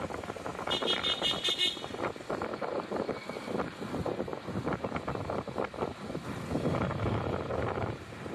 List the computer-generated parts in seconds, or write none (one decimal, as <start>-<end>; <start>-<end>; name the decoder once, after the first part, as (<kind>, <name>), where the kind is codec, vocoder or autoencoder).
none